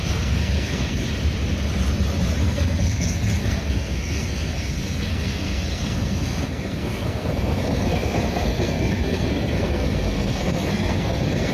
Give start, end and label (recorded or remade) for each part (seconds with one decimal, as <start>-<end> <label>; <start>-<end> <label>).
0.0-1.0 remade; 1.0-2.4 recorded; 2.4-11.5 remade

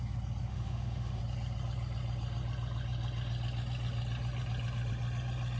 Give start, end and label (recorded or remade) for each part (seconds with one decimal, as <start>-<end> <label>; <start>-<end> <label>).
0.0-0.5 recorded; 0.5-1.2 remade; 1.2-5.6 recorded

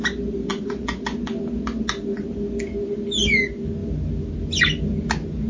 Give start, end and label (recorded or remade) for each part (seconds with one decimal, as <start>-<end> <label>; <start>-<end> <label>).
0.0-0.5 recorded; 0.5-1.0 remade; 1.0-5.5 recorded

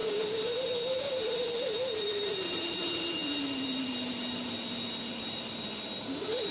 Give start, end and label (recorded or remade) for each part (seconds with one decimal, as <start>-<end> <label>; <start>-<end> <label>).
0.0-6.5 recorded

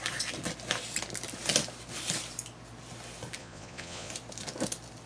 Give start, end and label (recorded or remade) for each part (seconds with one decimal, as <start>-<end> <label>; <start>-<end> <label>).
0.0-3.4 recorded; 3.4-4.1 remade; 4.1-5.1 recorded

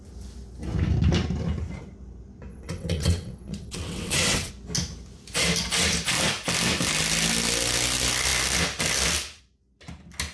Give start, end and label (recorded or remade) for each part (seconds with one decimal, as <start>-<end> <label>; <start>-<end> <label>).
0.0-2.5 recorded; 2.5-4.5 remade; 4.5-10.3 recorded

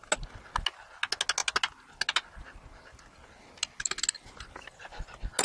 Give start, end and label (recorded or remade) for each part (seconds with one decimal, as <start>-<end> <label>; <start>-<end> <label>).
0.0-5.4 recorded